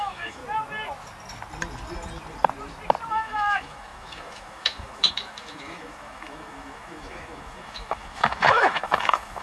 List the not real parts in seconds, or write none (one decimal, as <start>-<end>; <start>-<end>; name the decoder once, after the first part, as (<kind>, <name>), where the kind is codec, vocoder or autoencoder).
0.0-0.4 (autoencoder, DAC-VAE); 3.1-9.4